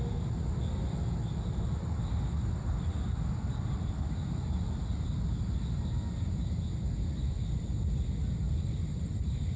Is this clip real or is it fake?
real